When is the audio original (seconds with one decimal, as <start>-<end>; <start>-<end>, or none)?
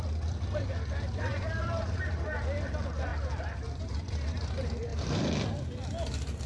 0.0-1.3; 2.2-3.1; 4.0-6.5